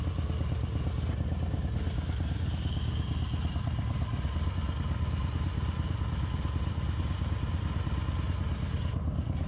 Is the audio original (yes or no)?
yes